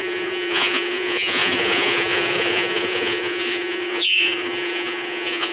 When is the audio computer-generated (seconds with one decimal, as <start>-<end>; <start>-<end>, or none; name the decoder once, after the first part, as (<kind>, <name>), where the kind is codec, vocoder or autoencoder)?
0.0-5.5 (vocoder, Vocos)